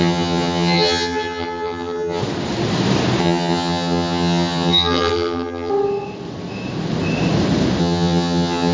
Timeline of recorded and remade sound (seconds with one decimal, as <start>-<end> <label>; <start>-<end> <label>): 0.0-2.2 remade; 2.2-3.2 recorded; 3.2-5.7 remade; 5.7-7.8 recorded; 7.8-8.7 remade